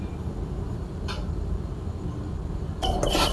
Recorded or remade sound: recorded